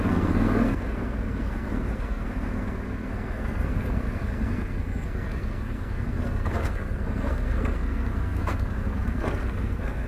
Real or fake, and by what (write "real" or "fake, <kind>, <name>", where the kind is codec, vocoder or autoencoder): fake, codec, SNAC